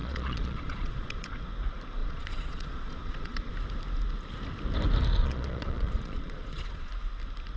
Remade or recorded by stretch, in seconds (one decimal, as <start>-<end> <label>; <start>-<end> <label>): 0.0-1.4 remade; 1.4-2.0 recorded; 2.0-3.5 remade; 3.5-5.2 recorded; 5.2-6.9 remade; 6.9-7.6 recorded